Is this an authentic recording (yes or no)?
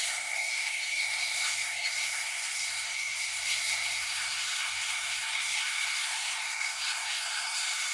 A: no